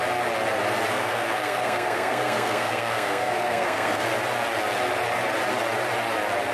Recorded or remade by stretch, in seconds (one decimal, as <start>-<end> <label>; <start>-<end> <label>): 0.0-0.9 recorded; 0.9-4.1 remade; 4.1-6.5 recorded